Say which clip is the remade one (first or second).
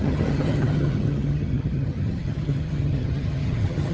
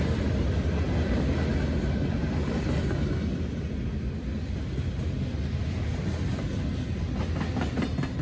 first